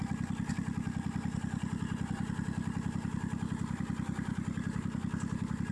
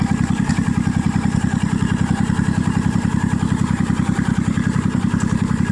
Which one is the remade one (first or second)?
second